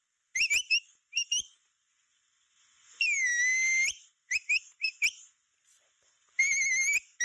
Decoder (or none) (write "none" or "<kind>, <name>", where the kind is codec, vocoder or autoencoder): none